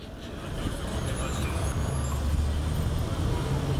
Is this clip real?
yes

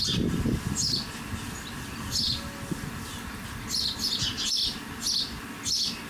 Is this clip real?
yes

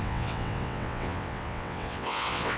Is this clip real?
no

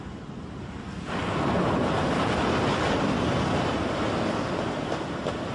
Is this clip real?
yes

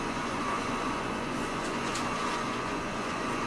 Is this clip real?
no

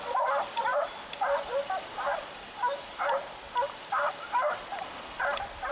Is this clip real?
yes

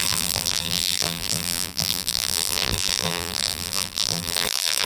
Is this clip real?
no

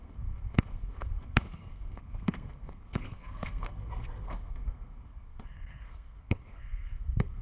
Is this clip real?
no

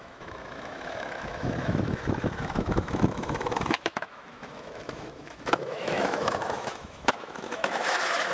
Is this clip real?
no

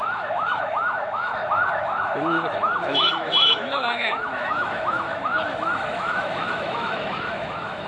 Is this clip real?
no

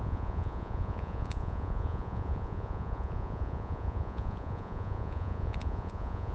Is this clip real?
no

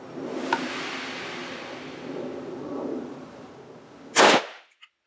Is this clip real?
yes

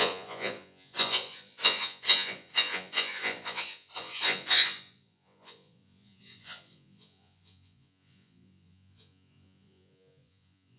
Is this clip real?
no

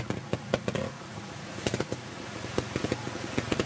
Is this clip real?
no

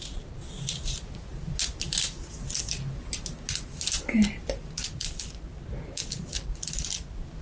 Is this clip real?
yes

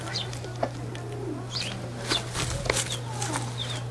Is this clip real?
yes